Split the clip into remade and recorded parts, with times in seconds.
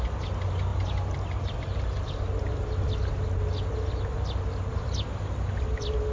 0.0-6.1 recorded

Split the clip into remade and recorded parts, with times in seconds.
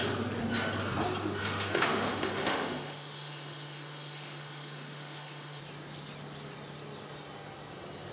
0.0-1.4 recorded; 1.4-5.6 remade; 5.6-8.1 recorded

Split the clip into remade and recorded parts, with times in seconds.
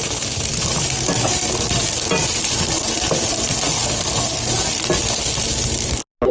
0.0-6.3 recorded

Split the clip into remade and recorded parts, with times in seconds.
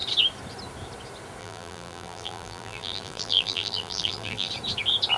0.0-1.4 recorded; 1.4-4.5 remade; 4.5-5.2 recorded